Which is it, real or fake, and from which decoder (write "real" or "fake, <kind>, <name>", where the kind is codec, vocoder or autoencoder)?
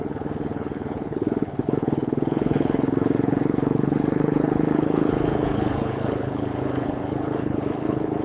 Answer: fake, codec, HILCodec